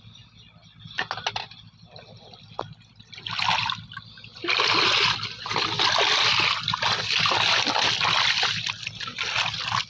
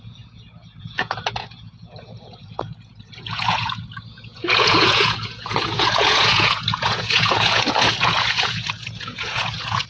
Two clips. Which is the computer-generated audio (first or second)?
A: second